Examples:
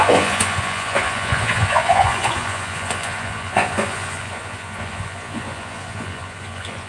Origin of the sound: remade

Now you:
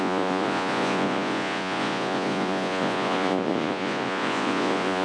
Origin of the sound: remade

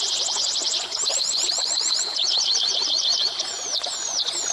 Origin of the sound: remade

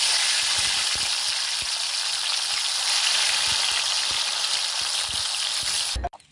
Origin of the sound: recorded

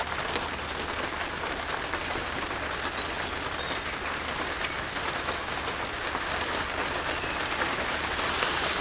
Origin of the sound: recorded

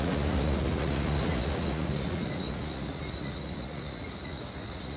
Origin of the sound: remade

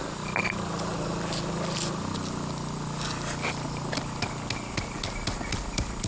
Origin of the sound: recorded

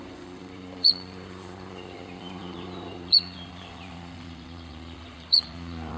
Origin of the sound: remade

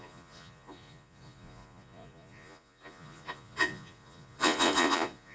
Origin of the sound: remade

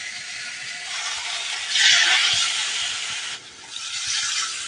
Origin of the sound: recorded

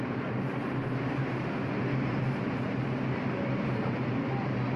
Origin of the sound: recorded